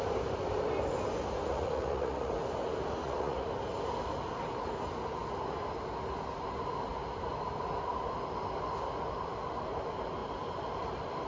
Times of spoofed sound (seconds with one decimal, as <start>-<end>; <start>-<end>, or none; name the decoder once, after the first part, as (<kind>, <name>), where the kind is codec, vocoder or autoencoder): 1.5-2.3 (vocoder, Vocos); 3.0-3.5